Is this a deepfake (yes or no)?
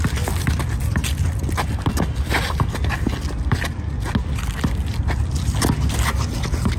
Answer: no